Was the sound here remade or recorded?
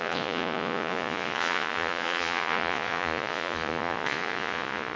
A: remade